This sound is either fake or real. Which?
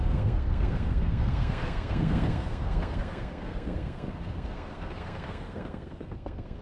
fake